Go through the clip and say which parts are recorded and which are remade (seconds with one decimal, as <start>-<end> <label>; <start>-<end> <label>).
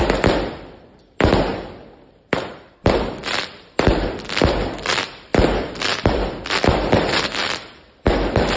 0.0-1.5 remade; 1.5-2.5 recorded; 2.5-8.6 remade